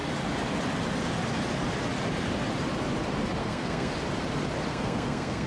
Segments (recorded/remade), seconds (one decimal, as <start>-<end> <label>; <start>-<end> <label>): 0.0-3.4 recorded; 3.4-3.9 remade; 3.9-4.7 recorded; 4.7-5.5 remade